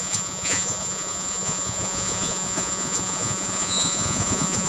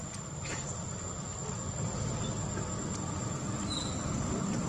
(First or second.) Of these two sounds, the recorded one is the second